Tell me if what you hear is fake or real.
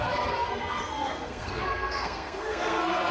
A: fake